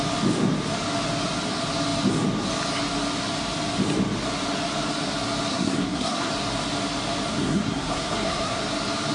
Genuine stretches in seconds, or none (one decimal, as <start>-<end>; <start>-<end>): 0.0-5.5; 6.3-7.3; 8.6-9.1